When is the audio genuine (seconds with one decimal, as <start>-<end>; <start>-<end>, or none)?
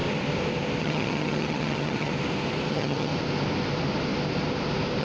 0.0-0.8; 2.1-2.7; 3.1-5.0